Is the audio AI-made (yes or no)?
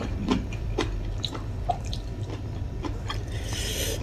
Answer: yes